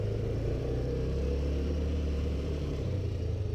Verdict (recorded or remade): remade